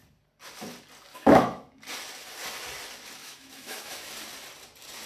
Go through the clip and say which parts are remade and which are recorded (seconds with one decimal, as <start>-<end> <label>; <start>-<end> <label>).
0.0-1.1 recorded; 1.1-1.8 remade; 1.8-3.2 recorded; 3.2-4.1 remade; 4.1-5.1 recorded